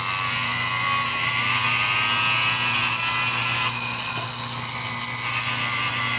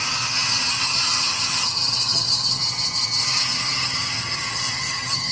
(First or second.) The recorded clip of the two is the first